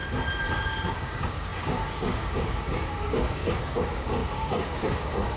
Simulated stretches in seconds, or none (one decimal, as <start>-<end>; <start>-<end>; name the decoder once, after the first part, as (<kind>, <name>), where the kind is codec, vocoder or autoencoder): 0.5-5.4 (codec, DAC)